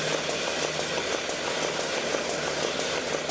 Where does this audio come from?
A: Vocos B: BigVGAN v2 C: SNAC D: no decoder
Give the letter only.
D